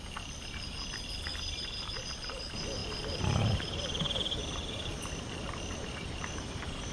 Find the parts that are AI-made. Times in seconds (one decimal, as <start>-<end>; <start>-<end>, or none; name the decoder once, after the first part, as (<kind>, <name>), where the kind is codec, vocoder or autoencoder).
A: 0.0-6.9 (vocoder, BigVGAN v2)